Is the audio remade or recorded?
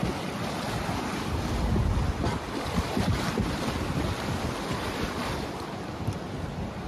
recorded